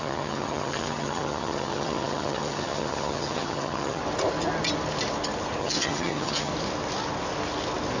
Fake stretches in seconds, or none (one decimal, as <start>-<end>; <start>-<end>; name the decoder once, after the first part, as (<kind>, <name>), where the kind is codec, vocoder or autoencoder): 0.0-4.0 (vocoder, HiFi-GAN); 5.6-6.5